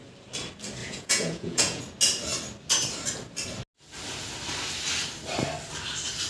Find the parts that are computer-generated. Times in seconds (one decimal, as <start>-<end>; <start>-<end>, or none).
0.8-1.8